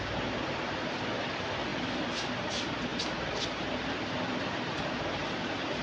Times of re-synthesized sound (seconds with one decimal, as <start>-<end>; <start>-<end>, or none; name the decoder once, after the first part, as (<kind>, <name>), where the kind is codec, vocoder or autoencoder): none